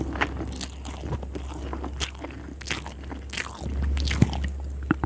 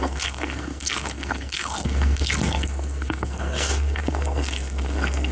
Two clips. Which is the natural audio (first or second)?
first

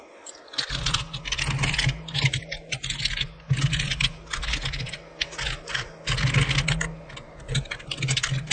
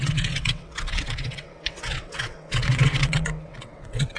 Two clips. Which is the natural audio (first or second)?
first